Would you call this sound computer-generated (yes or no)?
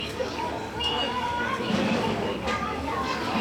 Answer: yes